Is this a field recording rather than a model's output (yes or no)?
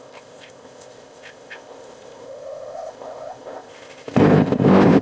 no